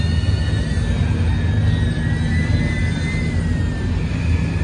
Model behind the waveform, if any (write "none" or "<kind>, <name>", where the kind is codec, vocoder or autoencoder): none